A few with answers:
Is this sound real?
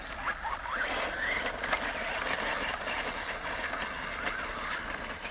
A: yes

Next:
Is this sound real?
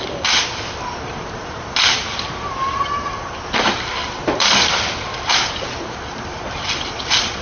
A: no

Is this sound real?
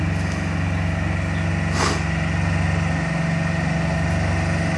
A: yes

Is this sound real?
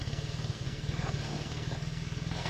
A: no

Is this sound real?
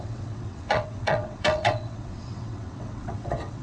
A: no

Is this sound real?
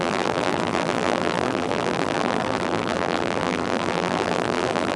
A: no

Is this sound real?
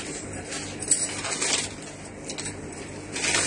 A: yes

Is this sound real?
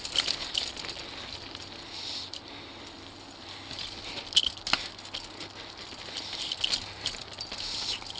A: yes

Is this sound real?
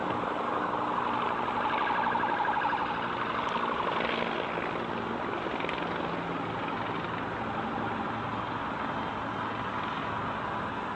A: yes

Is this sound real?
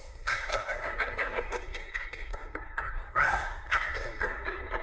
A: no